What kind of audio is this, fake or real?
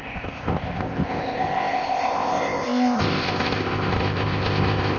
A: fake